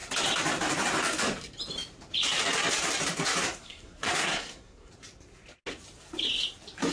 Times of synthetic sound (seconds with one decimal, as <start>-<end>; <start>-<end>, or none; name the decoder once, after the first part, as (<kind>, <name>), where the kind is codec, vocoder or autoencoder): 3.4-4.9 (codec, SNAC)